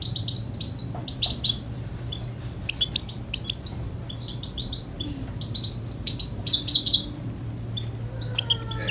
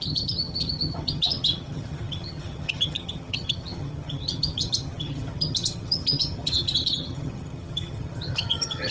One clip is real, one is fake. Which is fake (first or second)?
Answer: second